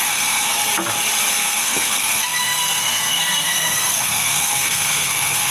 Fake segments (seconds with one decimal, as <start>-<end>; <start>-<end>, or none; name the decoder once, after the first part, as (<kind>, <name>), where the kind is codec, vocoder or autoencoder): 0.0-0.7 (codec, SNAC); 1.3-5.5